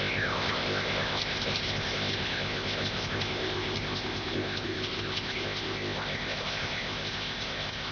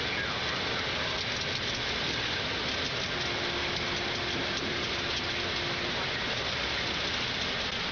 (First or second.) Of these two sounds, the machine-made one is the first